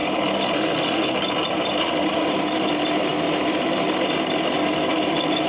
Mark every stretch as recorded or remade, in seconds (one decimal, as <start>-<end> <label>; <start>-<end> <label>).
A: 0.0-5.5 recorded

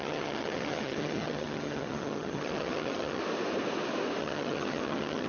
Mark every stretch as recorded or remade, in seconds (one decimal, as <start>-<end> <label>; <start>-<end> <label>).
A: 0.0-3.2 remade; 3.2-4.2 recorded; 4.2-5.3 remade

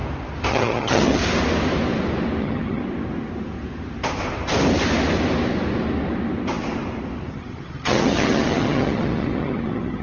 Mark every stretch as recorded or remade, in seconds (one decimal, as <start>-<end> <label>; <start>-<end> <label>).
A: 0.0-0.5 recorded; 0.5-1.2 remade; 1.2-2.4 recorded; 2.4-2.8 remade; 2.8-7.3 recorded; 7.3-10.0 remade

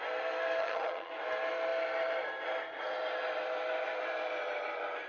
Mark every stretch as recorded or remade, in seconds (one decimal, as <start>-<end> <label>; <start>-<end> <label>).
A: 0.0-0.6 recorded; 0.6-1.1 remade; 1.1-5.1 recorded